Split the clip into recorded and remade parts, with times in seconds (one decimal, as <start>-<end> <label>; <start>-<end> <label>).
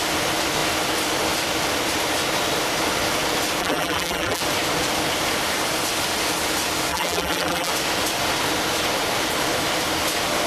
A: 0.0-3.6 recorded; 3.6-4.4 remade; 4.4-6.9 recorded; 6.9-7.7 remade; 7.7-10.5 recorded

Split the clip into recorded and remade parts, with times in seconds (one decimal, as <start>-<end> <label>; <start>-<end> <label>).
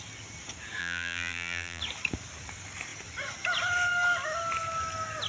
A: 0.0-0.8 recorded; 0.8-1.8 remade; 1.8-5.3 recorded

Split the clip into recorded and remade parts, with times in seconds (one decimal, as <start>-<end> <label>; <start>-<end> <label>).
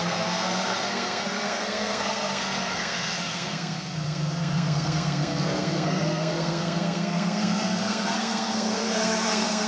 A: 0.0-9.7 remade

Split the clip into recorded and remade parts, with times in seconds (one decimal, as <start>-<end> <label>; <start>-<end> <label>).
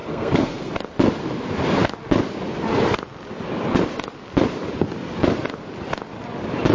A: 0.0-0.7 remade; 0.7-6.7 recorded